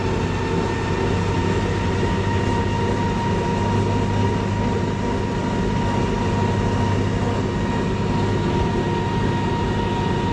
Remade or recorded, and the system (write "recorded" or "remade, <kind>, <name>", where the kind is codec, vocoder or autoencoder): recorded